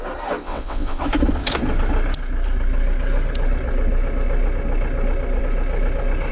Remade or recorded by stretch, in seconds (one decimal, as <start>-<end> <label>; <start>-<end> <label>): 0.0-0.4 recorded; 0.4-1.0 remade; 1.0-6.3 recorded